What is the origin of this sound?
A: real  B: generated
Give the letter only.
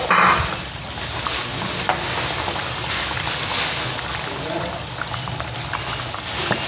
A